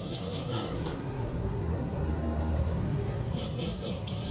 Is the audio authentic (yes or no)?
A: no